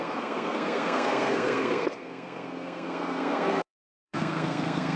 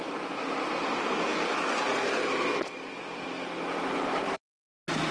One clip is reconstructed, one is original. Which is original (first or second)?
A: second